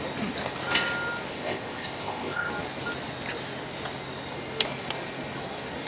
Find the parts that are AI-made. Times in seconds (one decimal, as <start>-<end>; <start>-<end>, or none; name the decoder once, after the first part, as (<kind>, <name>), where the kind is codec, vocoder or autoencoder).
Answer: 1.3-2.5 (codec, ZipCodec)